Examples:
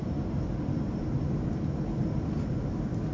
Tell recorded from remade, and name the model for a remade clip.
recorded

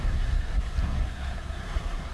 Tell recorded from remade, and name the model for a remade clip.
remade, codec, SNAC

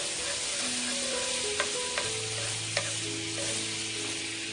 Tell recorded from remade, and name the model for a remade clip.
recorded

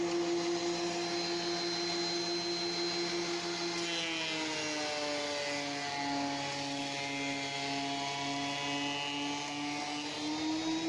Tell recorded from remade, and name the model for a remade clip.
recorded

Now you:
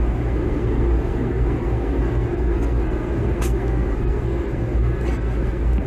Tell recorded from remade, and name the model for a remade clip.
remade, codec, SNAC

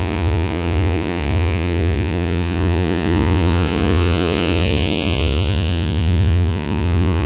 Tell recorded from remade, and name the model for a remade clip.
remade, vocoder, Vocos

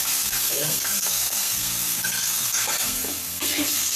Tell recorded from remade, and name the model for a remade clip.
remade, codec, SNAC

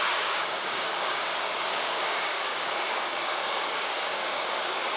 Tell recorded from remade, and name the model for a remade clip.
remade, codec, DAC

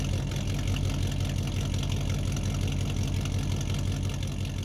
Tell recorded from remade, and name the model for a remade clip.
recorded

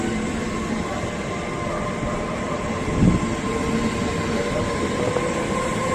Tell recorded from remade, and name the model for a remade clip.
recorded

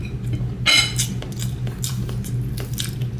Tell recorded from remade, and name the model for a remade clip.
recorded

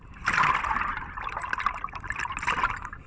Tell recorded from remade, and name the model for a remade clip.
recorded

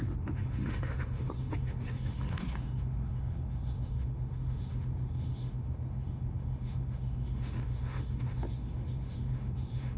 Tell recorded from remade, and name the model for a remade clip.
remade, autoencoder, DAC-VAE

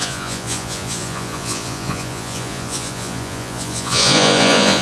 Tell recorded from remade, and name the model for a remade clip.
remade, vocoder, Vocos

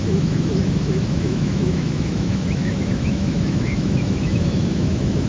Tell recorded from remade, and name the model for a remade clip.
remade, autoencoder, DAC-VAE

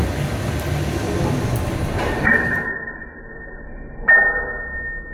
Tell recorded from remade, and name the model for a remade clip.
recorded